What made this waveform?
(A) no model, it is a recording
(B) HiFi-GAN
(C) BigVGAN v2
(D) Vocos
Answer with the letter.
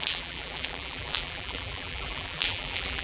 C